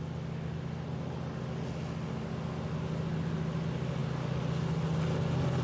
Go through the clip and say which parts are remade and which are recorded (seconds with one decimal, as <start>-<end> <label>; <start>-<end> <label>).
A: 0.0-5.6 recorded